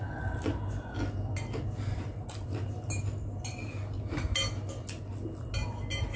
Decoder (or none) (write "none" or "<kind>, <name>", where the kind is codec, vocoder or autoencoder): none